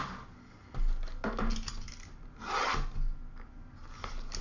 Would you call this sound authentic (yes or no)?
yes